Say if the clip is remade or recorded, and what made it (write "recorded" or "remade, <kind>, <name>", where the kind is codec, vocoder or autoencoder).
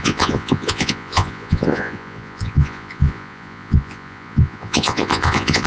remade, vocoder, Vocos